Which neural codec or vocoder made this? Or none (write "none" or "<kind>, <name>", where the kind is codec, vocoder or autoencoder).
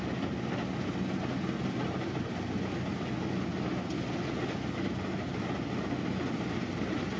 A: none